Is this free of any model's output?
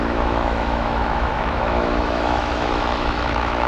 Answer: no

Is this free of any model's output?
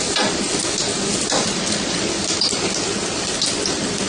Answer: yes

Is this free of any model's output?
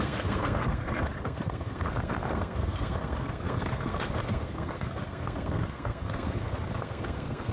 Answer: no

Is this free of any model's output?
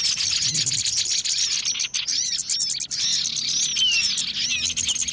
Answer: yes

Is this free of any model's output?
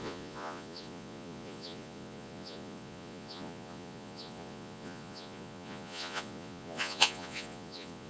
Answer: no